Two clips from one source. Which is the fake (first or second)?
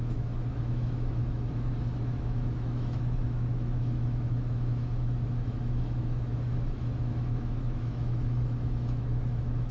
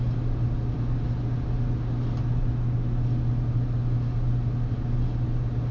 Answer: first